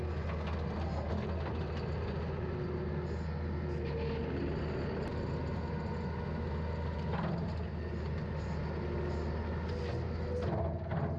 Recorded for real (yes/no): yes